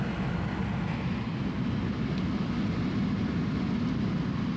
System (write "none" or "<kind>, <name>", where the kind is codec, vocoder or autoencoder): none